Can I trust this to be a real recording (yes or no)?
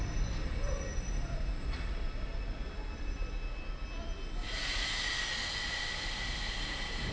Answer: yes